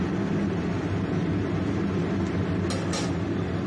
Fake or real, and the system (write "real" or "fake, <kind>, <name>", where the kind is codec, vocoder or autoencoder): real